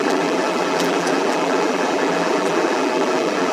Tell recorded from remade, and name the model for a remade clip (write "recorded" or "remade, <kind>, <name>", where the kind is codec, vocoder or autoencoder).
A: remade, vocoder, BigVGAN v2